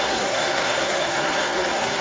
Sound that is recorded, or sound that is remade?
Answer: remade